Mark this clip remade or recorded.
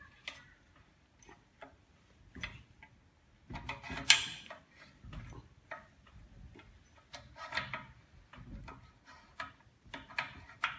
recorded